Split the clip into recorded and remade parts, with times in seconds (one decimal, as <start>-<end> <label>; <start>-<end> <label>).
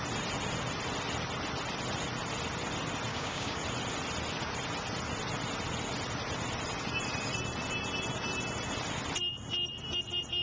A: 0.0-3.1 recorded; 3.1-3.6 remade; 3.6-10.4 recorded